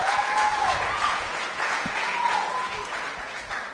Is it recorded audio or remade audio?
remade